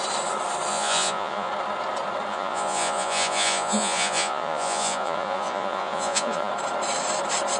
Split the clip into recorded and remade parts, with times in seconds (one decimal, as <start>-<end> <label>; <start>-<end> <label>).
0.0-0.7 recorded; 0.7-1.5 remade; 1.5-2.3 recorded; 2.3-6.5 remade; 6.5-7.6 recorded